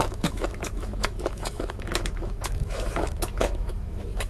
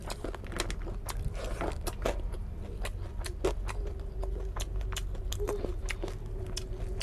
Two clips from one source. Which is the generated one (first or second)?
first